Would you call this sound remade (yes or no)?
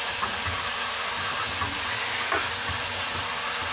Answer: no